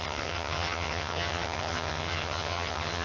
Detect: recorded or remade remade